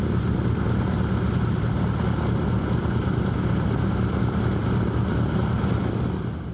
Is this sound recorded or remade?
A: recorded